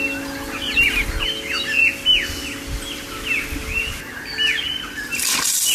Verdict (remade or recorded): recorded